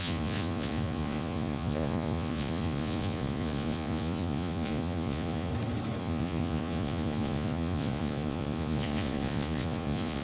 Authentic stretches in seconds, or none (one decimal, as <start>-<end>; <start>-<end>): 5.5-6.0

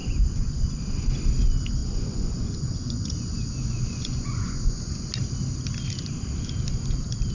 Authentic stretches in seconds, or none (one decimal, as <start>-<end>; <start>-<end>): 0.7-1.8; 5.1-7.3

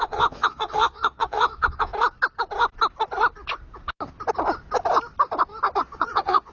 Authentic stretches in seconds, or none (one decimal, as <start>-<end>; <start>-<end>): 1.9-5.8